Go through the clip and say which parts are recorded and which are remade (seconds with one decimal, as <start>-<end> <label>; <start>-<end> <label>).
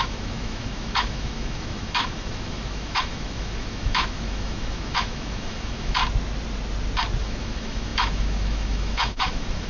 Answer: 0.0-6.0 remade; 6.0-7.2 recorded; 7.2-9.7 remade